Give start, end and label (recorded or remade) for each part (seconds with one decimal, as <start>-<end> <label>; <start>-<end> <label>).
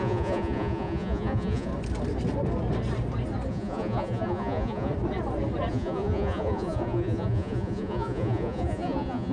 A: 0.0-1.7 remade; 1.7-3.5 recorded; 3.5-4.9 remade; 4.9-5.7 recorded; 5.7-9.3 remade